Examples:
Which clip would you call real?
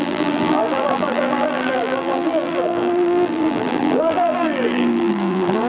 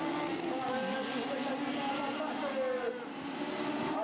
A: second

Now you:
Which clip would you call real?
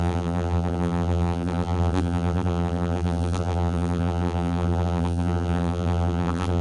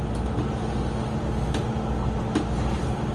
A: second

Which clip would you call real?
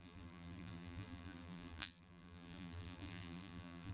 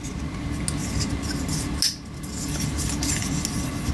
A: second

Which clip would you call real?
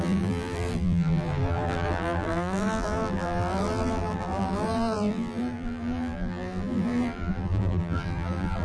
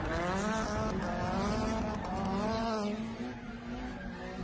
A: second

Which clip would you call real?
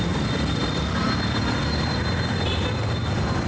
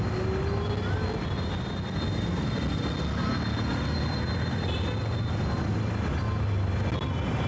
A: second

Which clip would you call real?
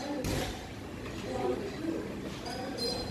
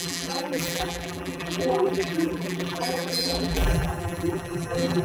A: first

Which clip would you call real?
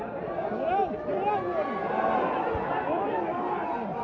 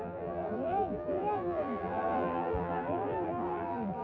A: first